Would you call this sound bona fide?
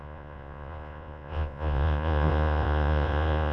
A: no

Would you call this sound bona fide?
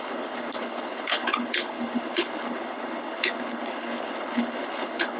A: no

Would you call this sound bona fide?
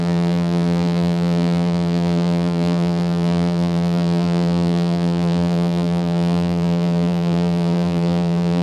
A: no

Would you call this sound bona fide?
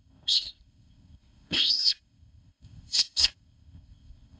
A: no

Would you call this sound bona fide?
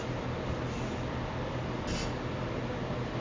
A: yes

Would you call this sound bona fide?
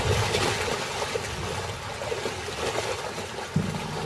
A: yes